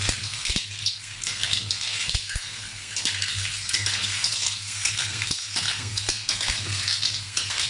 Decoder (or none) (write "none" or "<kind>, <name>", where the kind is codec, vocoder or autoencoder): codec, SNAC